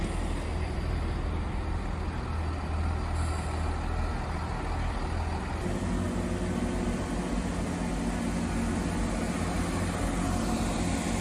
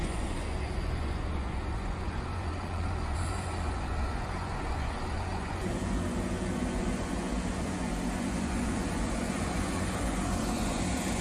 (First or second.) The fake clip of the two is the second